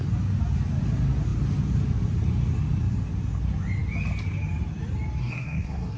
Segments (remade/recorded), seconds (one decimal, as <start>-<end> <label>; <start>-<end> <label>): 0.0-5.2 recorded; 5.2-6.0 remade